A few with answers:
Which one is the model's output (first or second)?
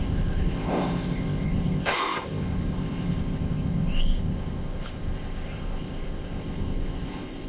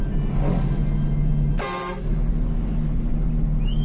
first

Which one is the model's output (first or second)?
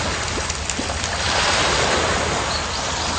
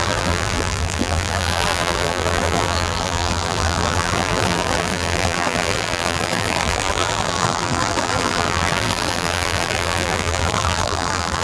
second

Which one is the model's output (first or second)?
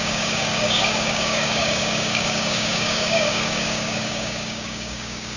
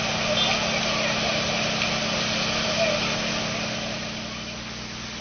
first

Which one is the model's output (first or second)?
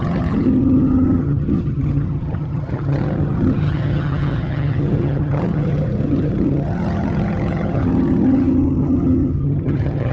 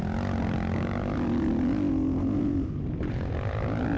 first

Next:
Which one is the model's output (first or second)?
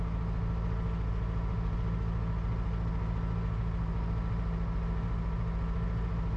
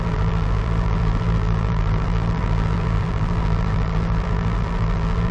second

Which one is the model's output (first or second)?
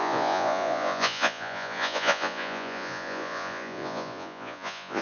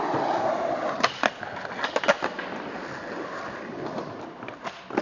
first